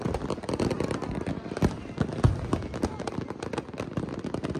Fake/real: real